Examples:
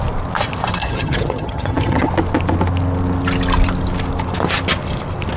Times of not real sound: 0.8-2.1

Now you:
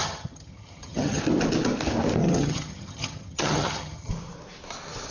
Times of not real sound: 0.0-1.2; 2.2-4.1

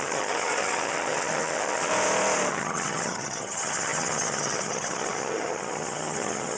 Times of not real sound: 0.0-1.9; 2.5-6.6

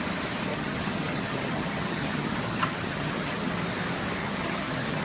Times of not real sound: 0.5-3.5; 4.2-5.0